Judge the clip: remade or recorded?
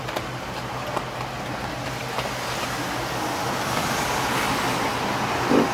recorded